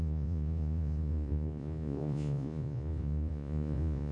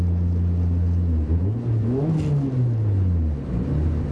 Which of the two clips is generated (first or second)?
first